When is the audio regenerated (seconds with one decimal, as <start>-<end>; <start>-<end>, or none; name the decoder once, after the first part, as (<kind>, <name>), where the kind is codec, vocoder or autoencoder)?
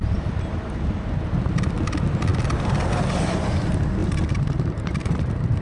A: 0.0-0.9 (vocoder, BigVGAN v2); 4.0-5.6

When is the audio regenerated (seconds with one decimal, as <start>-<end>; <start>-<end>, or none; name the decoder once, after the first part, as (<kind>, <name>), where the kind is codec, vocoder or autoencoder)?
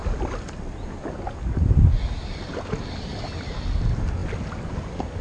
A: none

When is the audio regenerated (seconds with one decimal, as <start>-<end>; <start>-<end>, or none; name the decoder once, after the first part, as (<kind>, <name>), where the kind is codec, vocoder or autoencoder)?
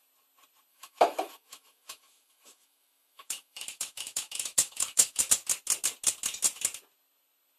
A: 0.7-5.3 (autoencoder, DAC-VAE)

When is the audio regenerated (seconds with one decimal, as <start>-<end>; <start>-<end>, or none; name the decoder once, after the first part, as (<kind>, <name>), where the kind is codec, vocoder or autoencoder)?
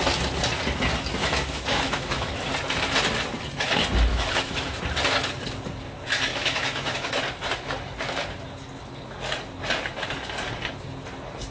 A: 1.2-2.3 (autoencoder, DAC-VAE); 4.1-4.8; 6.3-7.1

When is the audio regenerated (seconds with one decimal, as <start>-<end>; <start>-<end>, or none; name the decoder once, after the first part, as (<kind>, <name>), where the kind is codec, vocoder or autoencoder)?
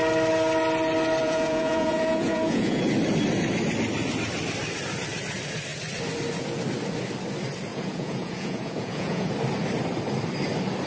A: 1.2-2.8 (vocoder, Vocos); 7.7-9.3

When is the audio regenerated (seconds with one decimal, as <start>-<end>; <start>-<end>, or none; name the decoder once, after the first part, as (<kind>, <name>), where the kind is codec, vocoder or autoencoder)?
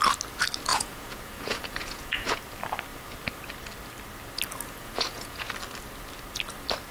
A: 0.7-2.4 (vocoder, Vocos); 4.8-5.5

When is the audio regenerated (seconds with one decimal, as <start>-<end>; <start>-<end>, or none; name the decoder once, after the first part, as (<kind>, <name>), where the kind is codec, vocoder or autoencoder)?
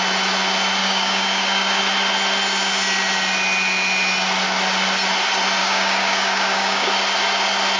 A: 0.8-1.8 (codec, DAC); 5.6-6.9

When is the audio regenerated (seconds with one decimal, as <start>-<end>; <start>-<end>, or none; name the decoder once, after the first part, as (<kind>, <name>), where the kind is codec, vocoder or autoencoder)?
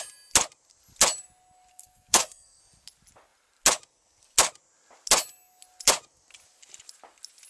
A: 1.7-2.6 (codec, SNAC)